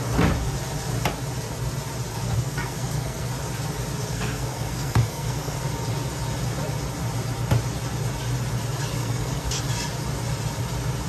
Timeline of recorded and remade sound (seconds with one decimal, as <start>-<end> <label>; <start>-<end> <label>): 0.0-2.1 recorded; 2.1-3.3 remade; 3.3-4.1 recorded; 4.1-5.7 remade; 5.7-9.0 recorded; 9.0-9.6 remade; 9.6-11.1 recorded